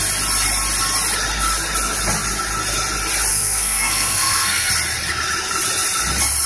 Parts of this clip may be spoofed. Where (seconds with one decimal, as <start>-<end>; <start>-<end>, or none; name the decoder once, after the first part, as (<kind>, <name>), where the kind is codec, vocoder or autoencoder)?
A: 3.3-4.7 (codec, SNAC)